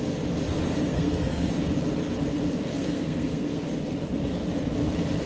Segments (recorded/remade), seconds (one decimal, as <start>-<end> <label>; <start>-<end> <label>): 0.0-0.9 recorded; 0.9-1.5 remade; 1.5-2.7 recorded; 2.7-3.6 remade; 3.6-5.3 recorded